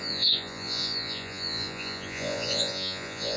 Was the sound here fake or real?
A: fake